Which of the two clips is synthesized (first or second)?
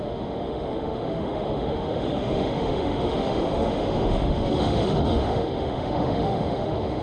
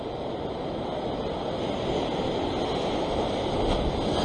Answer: first